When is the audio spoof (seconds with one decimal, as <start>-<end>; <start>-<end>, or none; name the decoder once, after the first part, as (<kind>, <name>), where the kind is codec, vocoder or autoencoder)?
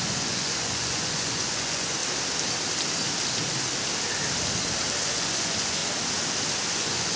0.0-2.0 (vocoder, Vocos); 5.0-5.8; 6.7-7.2